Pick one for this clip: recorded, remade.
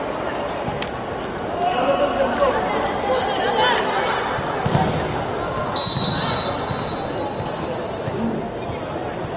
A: recorded